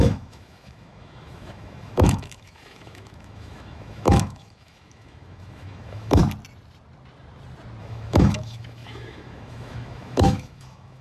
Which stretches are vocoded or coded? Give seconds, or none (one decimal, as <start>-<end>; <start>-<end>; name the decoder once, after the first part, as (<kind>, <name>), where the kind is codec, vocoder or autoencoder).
0.0-6.2 (autoencoder, DAC-VAE); 7.8-11.0